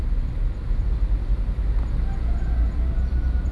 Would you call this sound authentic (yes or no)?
yes